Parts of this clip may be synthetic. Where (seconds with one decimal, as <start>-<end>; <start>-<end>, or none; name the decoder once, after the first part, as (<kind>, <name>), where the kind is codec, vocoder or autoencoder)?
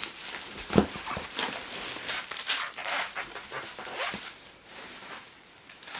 0.0-1.4 (vocoder, BigVGAN v2); 2.1-6.0